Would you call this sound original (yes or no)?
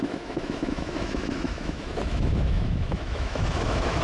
no